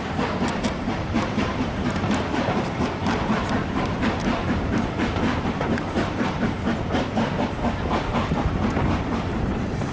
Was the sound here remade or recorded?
remade